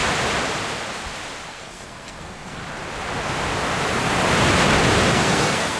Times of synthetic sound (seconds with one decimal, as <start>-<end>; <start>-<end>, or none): 1.5-2.6; 5.1-5.8